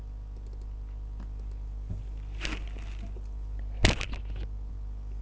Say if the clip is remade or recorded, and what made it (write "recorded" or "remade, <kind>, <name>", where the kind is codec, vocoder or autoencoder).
recorded